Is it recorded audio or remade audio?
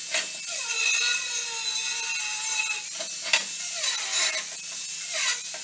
recorded